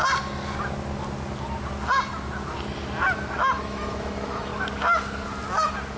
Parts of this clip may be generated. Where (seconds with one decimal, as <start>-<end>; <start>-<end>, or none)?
3.6-4.5